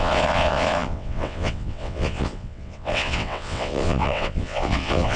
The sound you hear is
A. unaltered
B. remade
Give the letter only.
B